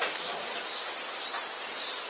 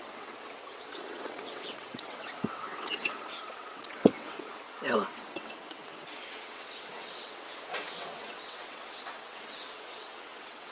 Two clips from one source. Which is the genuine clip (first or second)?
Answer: first